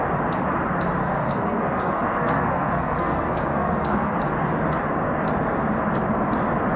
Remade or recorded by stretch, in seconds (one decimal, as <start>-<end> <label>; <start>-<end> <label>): 0.0-1.0 recorded; 1.0-4.1 remade; 4.1-6.8 recorded

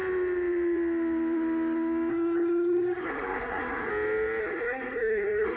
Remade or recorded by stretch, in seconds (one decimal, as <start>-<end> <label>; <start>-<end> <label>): 0.0-2.1 recorded; 2.1-3.9 remade; 3.9-4.4 recorded; 4.4-5.6 remade

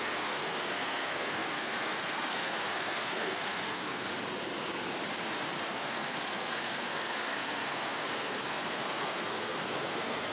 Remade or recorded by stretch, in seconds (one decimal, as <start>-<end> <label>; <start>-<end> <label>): 0.0-4.1 remade; 4.1-5.7 recorded; 5.7-10.3 remade

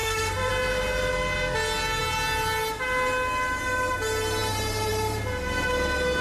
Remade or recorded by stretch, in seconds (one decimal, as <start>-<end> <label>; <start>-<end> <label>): 0.0-0.5 remade; 0.5-6.2 recorded

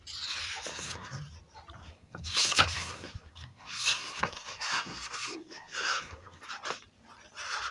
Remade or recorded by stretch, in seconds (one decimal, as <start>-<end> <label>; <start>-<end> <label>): 0.0-0.7 recorded; 0.7-1.2 remade; 1.2-1.8 recorded; 1.8-6.4 remade; 6.4-7.7 recorded

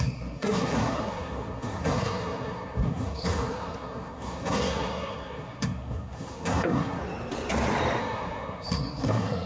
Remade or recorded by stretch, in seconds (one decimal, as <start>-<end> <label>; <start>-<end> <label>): 0.0-7.0 remade; 7.0-8.0 recorded; 8.0-9.5 remade

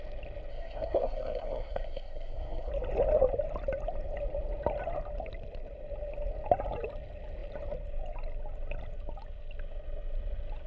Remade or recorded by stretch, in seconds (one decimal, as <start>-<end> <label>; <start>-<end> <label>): 0.0-0.5 recorded; 0.5-2.7 remade; 2.7-10.7 recorded

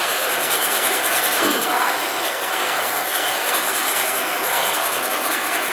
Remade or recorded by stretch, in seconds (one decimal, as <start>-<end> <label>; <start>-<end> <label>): 0.0-5.7 remade